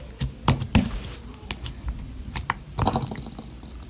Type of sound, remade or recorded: recorded